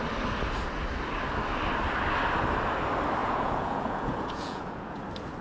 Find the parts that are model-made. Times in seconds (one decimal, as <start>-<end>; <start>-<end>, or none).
3.2-5.0